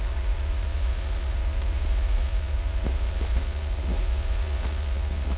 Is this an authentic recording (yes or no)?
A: no